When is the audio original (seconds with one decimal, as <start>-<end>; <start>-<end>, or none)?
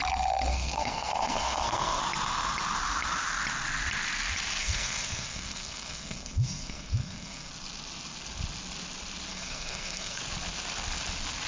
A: 0.0-0.5; 2.0-4.6; 7.5-9.3; 10.2-11.5